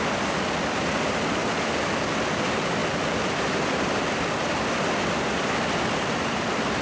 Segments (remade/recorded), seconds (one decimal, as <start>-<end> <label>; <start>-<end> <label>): 0.0-1.4 remade; 1.4-2.3 recorded; 2.3-6.8 remade